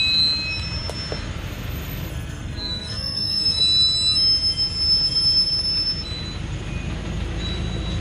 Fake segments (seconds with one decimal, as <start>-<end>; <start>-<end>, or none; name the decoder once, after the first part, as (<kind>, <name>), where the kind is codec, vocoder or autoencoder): 2.1-3.6 (codec, SNAC)